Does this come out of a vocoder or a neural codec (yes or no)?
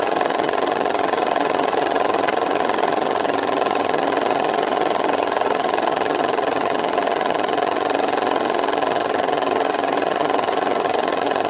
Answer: yes